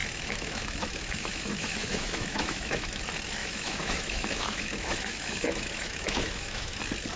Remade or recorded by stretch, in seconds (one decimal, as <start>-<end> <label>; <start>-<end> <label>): 0.0-3.0 remade; 3.0-3.4 recorded; 3.4-6.8 remade; 6.8-7.2 recorded